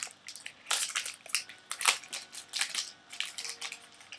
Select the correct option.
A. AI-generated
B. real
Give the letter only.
B